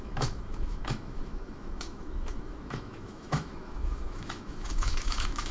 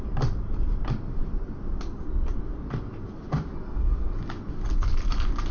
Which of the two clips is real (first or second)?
second